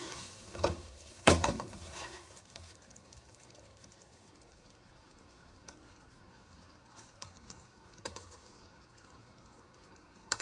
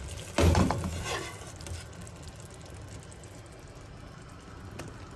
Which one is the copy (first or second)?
first